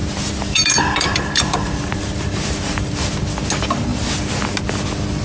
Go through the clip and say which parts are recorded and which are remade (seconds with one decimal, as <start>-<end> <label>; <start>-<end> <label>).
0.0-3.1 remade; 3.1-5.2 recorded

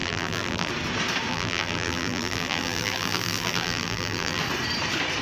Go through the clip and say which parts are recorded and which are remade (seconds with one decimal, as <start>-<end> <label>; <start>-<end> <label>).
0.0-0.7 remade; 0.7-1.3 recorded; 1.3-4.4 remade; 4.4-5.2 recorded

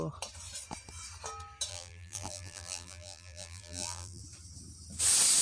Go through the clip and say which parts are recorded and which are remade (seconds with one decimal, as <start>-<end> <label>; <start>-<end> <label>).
0.0-1.7 recorded; 1.7-4.2 remade; 4.2-5.4 recorded